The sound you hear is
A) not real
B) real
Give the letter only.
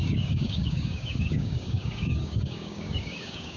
A